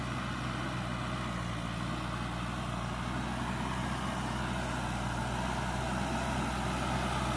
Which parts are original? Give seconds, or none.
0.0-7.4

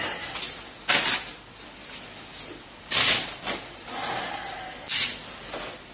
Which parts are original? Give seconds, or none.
0.0-5.9

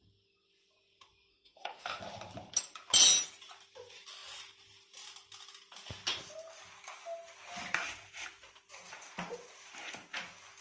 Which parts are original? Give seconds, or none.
0.0-1.3; 2.0-10.6

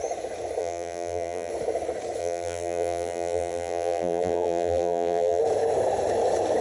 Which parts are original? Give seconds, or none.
0.0-0.6; 1.5-2.2; 5.4-6.6

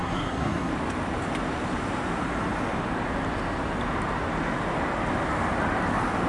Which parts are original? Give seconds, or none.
0.7-6.3

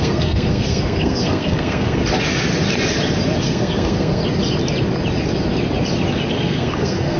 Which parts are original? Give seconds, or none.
2.0-3.4; 4.2-6.3